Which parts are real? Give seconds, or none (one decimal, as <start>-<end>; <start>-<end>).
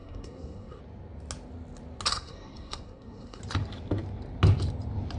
0.8-2.1; 3.4-5.2